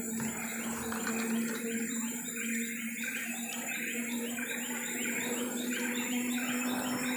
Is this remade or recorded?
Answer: recorded